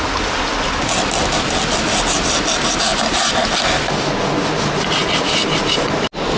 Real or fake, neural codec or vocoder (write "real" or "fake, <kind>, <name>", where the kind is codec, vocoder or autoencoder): real